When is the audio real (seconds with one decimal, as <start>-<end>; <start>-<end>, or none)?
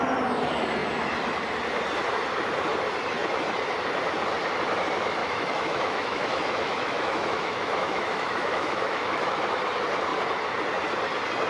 0.0-5.2; 9.4-11.5